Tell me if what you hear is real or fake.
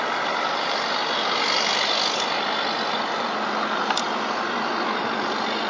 real